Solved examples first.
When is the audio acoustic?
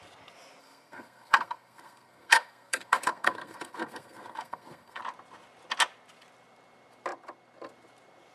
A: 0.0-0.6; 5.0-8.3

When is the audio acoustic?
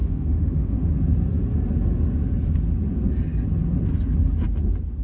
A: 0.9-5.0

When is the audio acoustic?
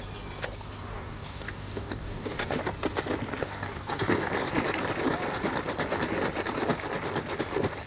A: 0.0-0.9; 2.6-3.4; 4.3-7.9